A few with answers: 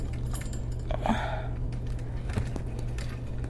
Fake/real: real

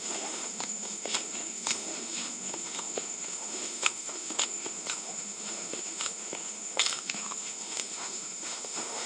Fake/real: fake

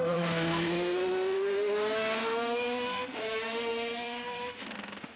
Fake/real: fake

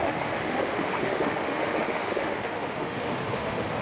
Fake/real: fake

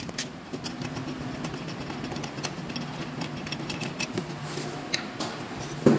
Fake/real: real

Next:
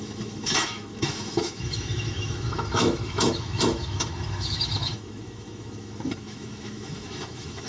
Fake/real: fake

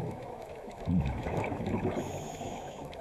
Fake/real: fake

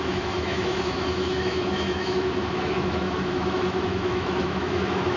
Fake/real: fake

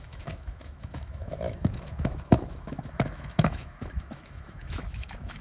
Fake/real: fake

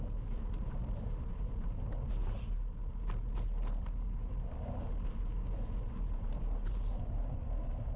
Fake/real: real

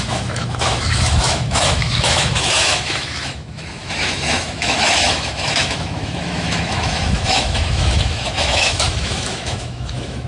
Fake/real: fake